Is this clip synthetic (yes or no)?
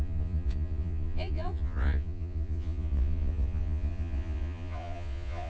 yes